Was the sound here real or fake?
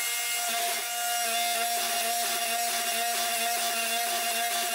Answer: real